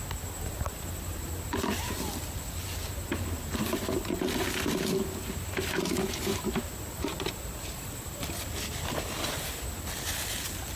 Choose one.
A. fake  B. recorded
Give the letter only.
B